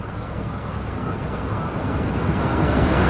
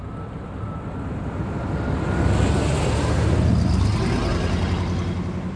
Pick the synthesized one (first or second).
first